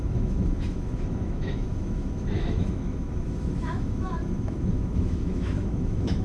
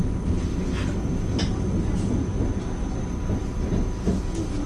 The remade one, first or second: first